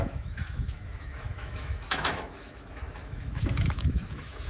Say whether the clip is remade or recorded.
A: remade